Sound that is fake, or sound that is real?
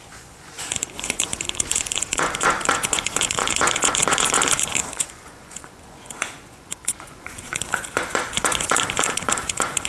fake